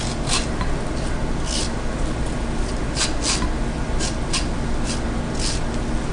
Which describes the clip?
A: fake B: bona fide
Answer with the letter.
B